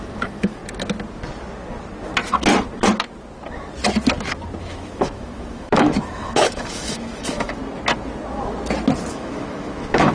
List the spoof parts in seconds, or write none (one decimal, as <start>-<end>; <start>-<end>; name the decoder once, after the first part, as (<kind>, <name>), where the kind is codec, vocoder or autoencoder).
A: 0.0-0.6 (autoencoder, DAC-VAE); 4.6-7.6; 9.1-10.1